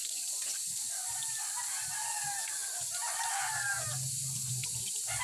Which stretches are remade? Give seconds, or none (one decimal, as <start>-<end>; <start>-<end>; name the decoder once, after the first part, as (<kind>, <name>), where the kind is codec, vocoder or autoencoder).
none